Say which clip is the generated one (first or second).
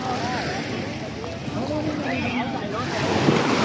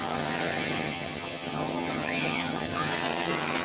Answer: second